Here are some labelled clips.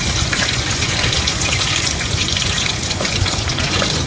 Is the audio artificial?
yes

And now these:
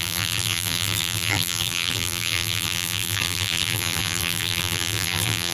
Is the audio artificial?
yes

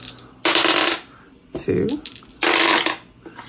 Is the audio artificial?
no